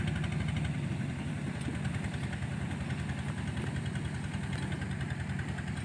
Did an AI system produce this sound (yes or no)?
no